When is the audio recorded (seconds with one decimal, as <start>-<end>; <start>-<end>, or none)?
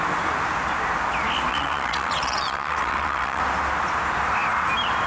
0.0-1.5; 3.4-5.1